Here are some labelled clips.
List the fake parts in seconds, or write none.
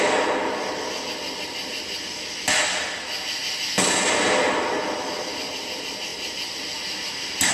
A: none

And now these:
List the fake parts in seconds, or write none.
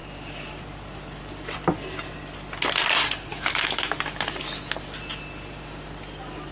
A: 3.3-4.0 (autoencoder, DAC-VAE)